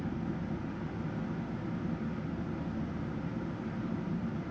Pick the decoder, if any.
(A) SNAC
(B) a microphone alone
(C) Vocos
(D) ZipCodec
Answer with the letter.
B